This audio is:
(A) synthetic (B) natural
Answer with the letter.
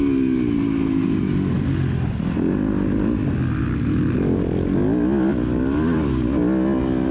B